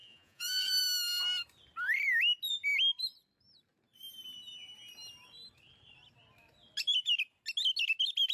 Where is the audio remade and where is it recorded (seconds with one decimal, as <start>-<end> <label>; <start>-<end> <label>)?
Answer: 0.0-0.8 remade; 0.8-8.3 recorded

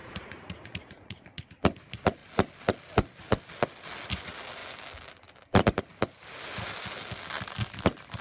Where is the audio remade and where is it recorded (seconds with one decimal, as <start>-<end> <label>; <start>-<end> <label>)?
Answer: 0.0-1.4 remade; 1.4-8.2 recorded

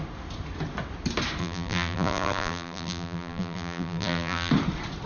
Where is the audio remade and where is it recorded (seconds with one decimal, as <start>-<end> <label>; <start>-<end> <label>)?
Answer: 0.0-1.4 recorded; 1.4-4.5 remade; 4.5-5.1 recorded

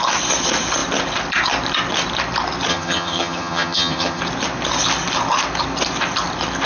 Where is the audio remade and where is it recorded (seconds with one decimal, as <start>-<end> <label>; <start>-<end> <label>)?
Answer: 0.0-2.7 recorded; 2.7-4.2 remade; 4.2-6.7 recorded

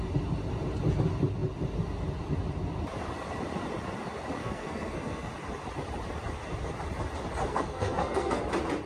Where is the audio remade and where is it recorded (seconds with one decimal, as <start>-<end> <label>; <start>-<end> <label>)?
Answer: 0.0-4.4 recorded; 4.4-5.3 remade; 5.3-7.5 recorded; 7.5-8.4 remade; 8.4-8.9 recorded